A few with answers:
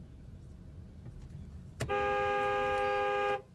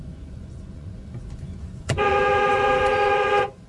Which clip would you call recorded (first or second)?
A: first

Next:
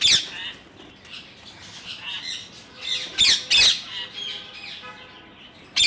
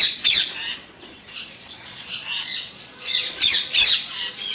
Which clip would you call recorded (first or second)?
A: first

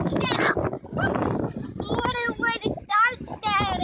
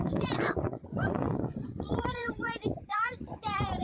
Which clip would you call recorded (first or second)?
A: first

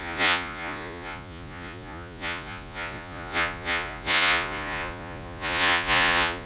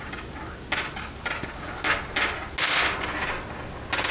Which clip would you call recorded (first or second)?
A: second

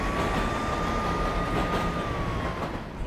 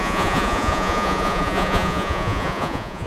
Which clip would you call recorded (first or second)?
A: first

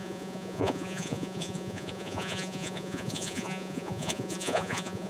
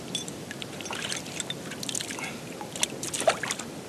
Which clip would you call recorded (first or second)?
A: second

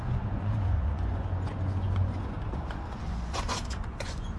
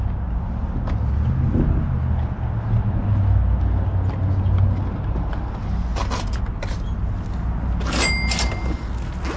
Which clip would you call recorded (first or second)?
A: second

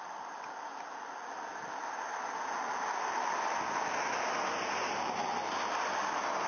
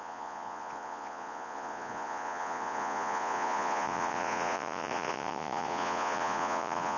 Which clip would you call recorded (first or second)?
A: first